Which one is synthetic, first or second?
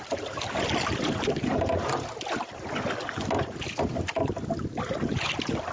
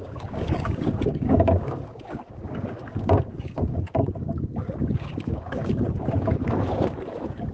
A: second